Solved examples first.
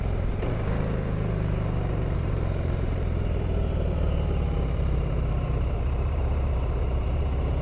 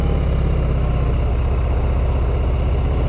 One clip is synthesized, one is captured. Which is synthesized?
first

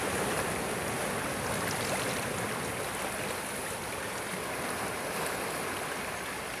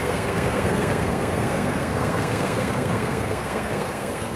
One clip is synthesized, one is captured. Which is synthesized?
second